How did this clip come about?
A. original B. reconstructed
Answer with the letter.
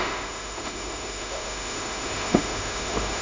B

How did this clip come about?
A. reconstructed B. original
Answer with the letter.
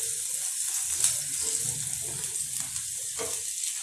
B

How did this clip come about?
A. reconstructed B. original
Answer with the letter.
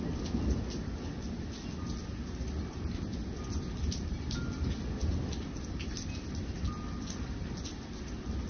B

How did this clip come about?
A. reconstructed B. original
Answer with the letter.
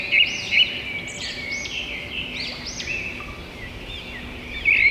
B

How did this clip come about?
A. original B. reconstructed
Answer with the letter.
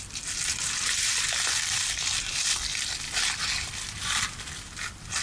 A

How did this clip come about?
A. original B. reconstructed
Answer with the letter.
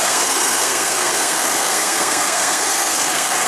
B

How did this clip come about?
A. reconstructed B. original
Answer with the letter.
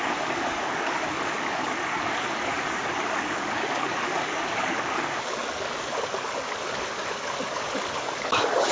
A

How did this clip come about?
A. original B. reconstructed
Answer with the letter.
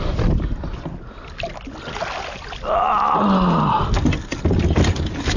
A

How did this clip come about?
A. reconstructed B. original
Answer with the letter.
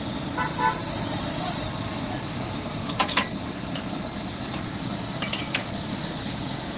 A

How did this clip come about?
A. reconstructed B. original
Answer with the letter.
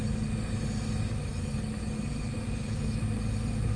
B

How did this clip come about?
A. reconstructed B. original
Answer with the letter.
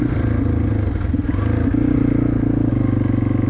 B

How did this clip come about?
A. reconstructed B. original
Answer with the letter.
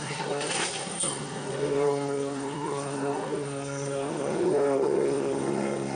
A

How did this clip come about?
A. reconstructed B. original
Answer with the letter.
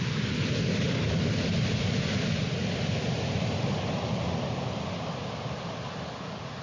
B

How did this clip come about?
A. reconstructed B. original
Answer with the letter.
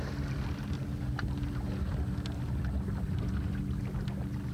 B